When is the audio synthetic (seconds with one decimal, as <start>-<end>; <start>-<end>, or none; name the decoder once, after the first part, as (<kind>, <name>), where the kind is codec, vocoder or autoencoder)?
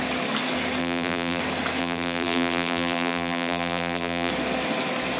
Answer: 0.8-1.4 (vocoder, BigVGAN v2); 1.8-4.3